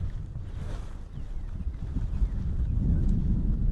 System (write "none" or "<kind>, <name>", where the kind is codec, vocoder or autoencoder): vocoder, BigVGAN v2